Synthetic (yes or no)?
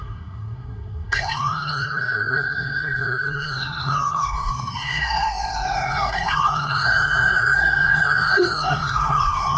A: yes